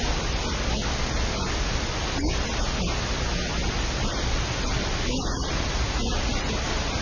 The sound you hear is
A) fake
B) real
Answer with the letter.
B